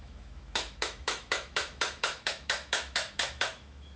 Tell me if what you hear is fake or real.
fake